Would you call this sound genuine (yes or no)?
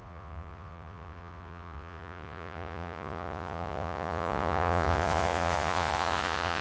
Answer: no